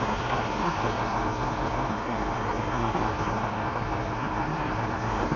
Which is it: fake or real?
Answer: fake